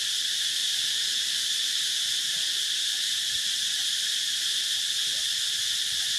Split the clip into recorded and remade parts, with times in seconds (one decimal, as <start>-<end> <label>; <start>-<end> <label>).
0.0-0.6 recorded; 0.6-4.2 remade; 4.2-6.2 recorded